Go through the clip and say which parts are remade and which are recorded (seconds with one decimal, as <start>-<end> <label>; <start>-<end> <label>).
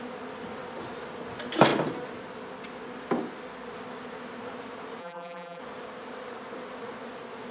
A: 0.0-5.0 recorded; 5.0-5.6 remade; 5.6-7.5 recorded